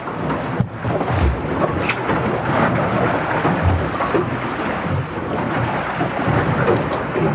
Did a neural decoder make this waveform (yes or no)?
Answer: no